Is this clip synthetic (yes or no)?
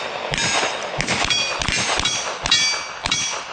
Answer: no